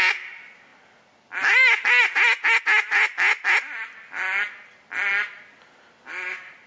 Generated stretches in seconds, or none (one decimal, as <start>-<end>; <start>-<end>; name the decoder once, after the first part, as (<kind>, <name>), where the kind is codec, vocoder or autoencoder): none